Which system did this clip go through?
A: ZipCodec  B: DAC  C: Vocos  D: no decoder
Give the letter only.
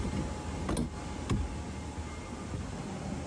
D